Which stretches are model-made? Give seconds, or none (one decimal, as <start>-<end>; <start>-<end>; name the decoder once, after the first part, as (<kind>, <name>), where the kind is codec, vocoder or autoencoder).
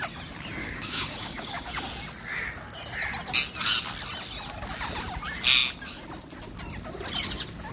0.6-1.9 (codec, DAC)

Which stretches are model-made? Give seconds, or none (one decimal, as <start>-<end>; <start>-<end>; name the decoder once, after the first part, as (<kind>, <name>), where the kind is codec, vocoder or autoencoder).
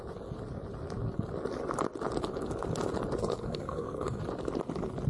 3.2-4.2 (codec, SNAC)